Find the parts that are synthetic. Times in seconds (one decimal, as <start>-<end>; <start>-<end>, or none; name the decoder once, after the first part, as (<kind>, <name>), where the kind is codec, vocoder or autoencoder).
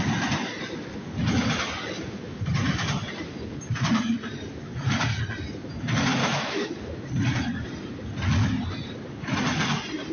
6.2-6.7 (autoencoder, DAC-VAE)